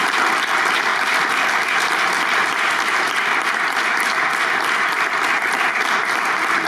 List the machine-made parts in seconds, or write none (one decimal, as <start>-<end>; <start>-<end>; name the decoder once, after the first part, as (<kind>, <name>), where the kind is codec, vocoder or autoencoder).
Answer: none